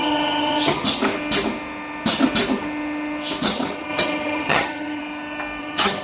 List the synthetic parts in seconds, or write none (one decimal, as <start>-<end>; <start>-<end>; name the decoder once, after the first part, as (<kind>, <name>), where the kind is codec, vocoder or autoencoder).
0.0-1.0 (vocoder, HiFi-GAN); 3.4-5.0; 5.6-6.0